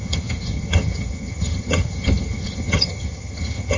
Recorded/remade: remade